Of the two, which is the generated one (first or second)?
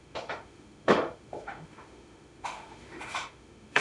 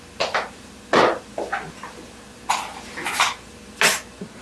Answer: first